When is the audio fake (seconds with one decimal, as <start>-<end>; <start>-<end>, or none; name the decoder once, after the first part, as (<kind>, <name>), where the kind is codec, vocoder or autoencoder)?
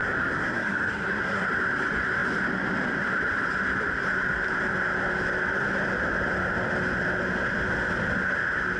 0.0-1.5 (codec, SNAC)